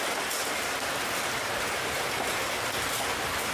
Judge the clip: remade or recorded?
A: recorded